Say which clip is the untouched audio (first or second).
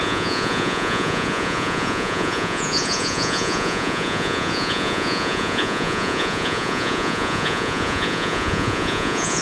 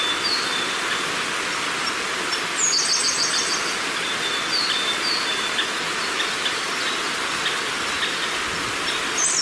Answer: second